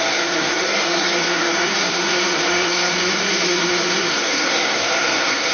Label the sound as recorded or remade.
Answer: remade